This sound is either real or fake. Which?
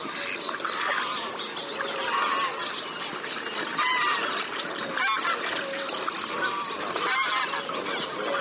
real